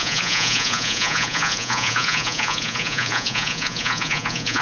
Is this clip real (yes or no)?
no